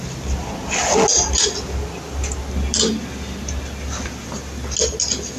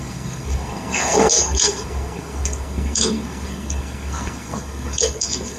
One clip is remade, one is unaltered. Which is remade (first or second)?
second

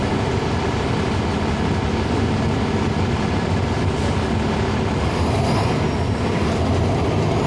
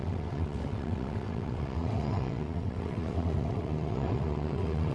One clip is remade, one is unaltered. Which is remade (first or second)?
second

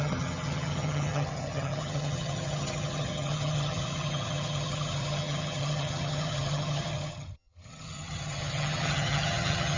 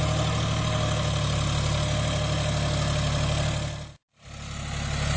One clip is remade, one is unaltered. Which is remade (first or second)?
first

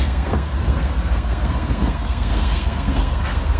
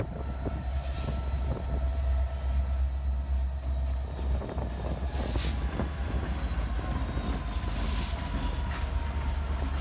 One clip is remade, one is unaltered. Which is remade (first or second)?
first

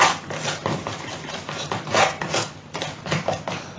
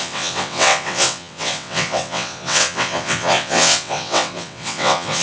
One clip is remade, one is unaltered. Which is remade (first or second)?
second